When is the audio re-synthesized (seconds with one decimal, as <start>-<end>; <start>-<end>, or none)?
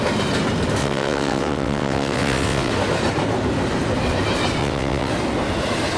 0.8-2.7; 4.6-5.1